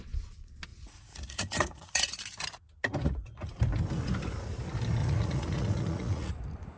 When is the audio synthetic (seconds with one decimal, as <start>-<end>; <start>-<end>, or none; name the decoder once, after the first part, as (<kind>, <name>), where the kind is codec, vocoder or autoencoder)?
0.7-2.1 (vocoder, Vocos); 3.0-3.6; 5.0-6.3